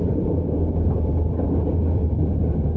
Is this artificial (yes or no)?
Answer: yes